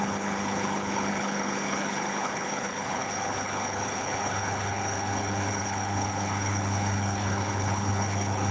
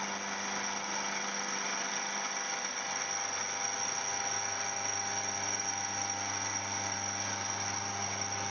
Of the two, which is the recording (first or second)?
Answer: second